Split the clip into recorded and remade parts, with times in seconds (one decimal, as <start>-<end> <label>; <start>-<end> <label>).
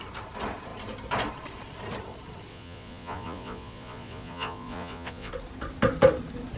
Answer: 0.0-2.5 recorded; 2.5-5.3 remade; 5.3-6.6 recorded